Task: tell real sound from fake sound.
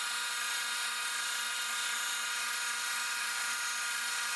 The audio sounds real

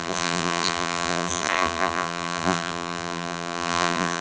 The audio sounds fake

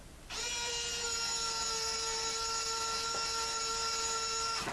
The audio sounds real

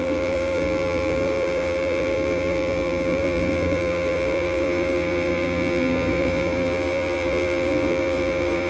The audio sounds fake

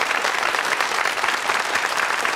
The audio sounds fake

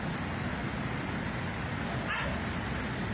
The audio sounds real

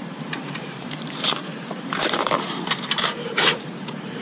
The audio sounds fake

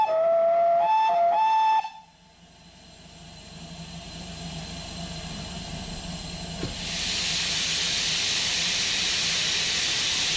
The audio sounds real